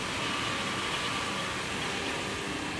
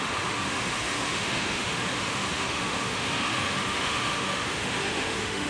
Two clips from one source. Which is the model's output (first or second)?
second